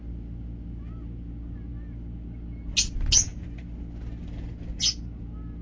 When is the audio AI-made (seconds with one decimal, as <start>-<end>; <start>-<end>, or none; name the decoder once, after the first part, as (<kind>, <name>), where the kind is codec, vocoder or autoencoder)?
none